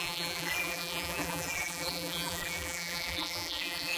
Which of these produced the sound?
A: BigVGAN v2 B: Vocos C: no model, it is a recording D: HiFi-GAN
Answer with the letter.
A